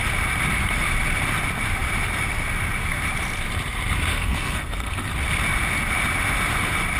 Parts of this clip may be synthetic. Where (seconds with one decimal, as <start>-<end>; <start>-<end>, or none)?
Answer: 4.1-5.1